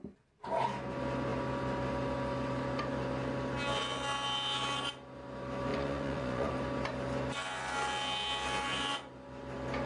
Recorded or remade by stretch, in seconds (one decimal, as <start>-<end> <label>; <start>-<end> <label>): 0.0-5.7 recorded; 5.7-6.5 remade; 6.5-9.9 recorded